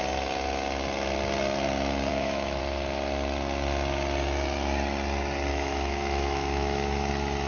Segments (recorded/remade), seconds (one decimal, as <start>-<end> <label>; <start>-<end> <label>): 0.0-2.1 recorded; 2.1-2.6 remade; 2.6-5.5 recorded; 5.5-7.1 remade; 7.1-7.5 recorded